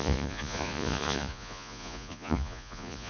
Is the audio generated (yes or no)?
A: yes